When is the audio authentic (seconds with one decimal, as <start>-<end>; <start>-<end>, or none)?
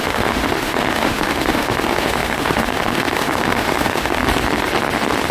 4.2-5.3